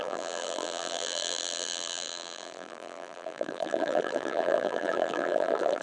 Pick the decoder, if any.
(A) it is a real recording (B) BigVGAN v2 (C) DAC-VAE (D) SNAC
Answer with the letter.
B